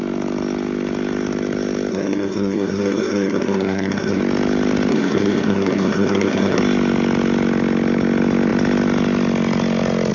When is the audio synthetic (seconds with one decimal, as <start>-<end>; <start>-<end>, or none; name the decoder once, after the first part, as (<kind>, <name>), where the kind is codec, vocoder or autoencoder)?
1.9-4.2 (codec, SNAC); 4.9-6.6